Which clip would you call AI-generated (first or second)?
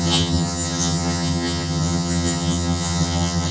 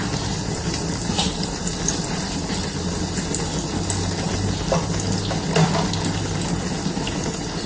first